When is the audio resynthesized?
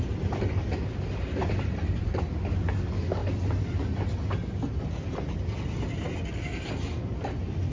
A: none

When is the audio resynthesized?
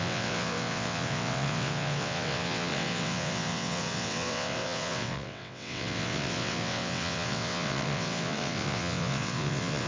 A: 0.0-9.9 (vocoder, WaveNeXt)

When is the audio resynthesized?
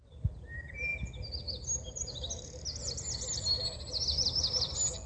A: none